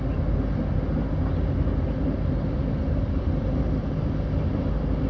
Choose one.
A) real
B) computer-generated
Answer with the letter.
A